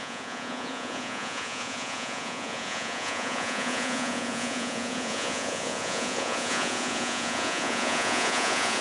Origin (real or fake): fake